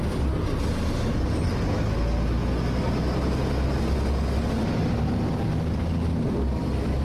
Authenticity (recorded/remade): recorded